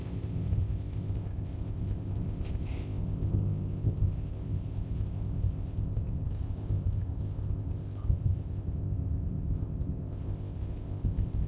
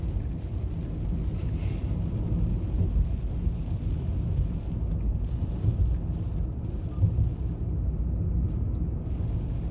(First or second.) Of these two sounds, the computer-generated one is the first